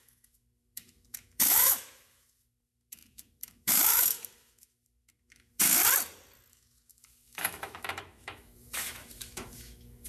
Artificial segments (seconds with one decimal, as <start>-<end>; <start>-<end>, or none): 0.0-5.8; 6.5-10.1